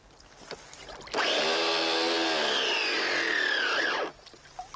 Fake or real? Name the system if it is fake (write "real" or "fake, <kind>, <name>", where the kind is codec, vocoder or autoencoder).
real